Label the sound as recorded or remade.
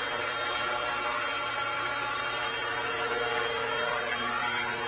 recorded